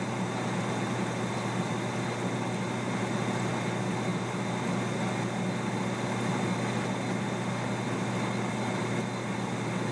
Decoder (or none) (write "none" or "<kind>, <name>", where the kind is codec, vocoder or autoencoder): none